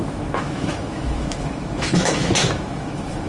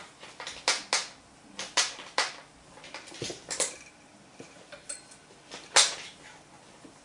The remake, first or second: first